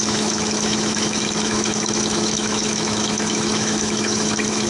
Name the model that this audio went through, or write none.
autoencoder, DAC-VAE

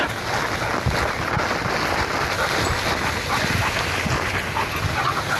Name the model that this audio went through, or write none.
none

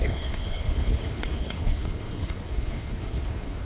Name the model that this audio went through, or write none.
codec, HILCodec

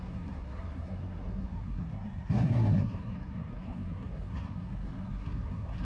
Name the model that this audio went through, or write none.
codec, SNAC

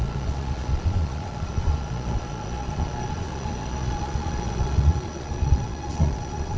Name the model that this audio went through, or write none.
vocoder, Vocos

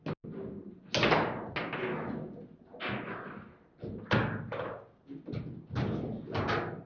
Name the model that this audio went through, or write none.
none